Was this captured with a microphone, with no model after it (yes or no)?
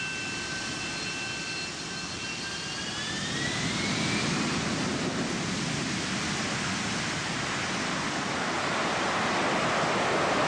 yes